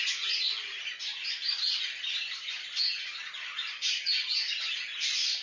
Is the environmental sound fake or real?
real